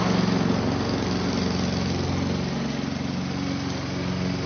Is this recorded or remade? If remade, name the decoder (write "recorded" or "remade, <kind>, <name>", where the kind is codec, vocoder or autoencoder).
recorded